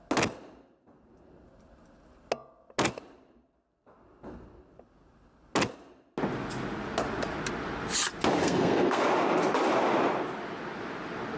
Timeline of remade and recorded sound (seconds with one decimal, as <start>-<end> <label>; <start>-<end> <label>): 0.0-8.4 recorded; 8.4-9.0 remade; 9.0-11.4 recorded